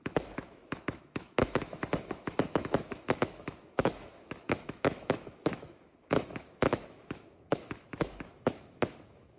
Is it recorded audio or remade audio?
remade